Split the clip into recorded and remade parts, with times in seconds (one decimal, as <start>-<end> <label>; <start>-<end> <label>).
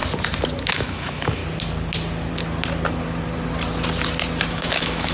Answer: 0.0-0.7 recorded; 0.7-1.4 remade; 1.4-4.5 recorded; 4.5-5.1 remade